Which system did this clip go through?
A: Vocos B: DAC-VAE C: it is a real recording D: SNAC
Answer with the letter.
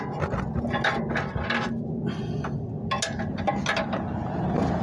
C